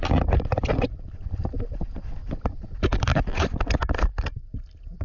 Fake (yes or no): no